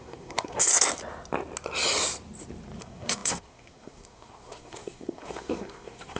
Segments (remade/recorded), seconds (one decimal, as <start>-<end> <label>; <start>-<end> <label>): 0.0-0.7 remade; 0.7-2.8 recorded; 2.8-6.2 remade